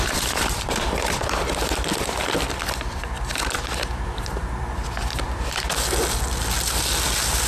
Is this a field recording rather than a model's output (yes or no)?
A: no